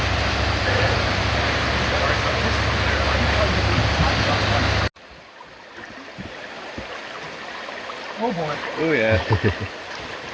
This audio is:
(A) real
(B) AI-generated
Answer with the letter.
A